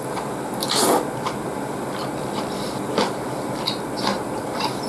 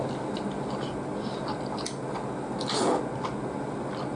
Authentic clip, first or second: second